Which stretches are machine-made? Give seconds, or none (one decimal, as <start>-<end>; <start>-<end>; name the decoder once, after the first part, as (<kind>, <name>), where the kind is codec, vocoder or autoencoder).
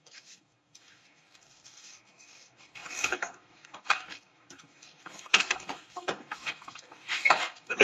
0.0-7.8 (codec, DAC)